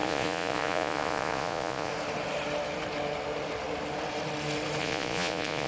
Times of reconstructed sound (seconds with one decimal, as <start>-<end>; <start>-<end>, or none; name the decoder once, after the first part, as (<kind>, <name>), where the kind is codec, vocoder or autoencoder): 0.0-1.9 (vocoder, Vocos); 4.8-5.7